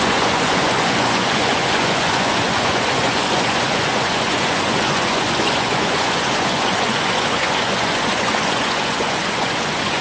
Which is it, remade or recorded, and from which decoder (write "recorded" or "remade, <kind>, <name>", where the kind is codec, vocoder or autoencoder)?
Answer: remade, vocoder, Vocos